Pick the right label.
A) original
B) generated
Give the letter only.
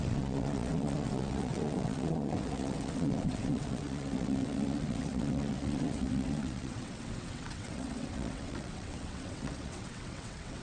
B